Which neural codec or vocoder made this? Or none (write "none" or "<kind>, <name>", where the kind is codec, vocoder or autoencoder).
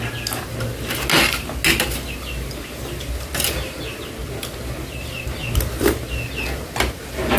none